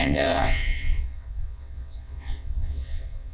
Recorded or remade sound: remade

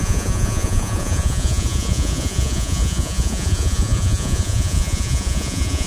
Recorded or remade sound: remade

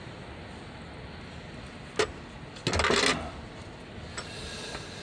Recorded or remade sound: recorded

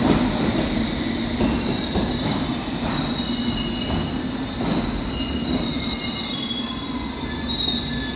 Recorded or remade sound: recorded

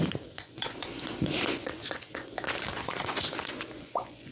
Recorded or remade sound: remade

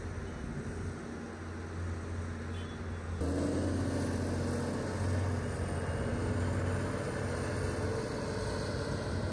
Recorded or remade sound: recorded